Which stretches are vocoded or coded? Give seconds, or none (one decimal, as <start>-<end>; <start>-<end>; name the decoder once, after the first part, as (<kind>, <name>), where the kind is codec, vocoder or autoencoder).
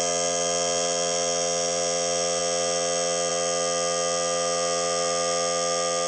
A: none